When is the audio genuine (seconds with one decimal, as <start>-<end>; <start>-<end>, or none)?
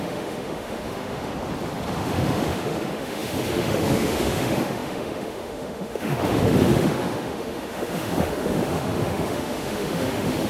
1.3-1.9